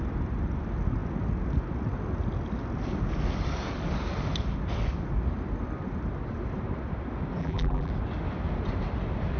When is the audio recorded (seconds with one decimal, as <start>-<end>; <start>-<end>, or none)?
0.0-7.4; 7.9-9.4